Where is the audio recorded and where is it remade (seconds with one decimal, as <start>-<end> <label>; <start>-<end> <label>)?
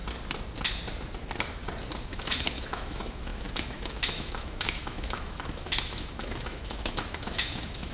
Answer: 0.0-2.0 recorded; 2.0-7.9 remade